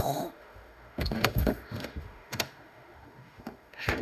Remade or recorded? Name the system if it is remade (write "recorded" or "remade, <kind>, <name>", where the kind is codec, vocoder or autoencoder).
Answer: remade, autoencoder, DAC-VAE